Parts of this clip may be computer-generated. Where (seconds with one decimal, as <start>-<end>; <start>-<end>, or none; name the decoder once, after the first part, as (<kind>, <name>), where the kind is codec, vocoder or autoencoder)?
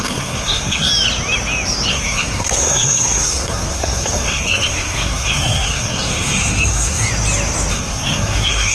0.0-0.9 (codec, SNAC); 1.9-7.1; 7.7-8.7